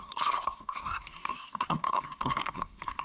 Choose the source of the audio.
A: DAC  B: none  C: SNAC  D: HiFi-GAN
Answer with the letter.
C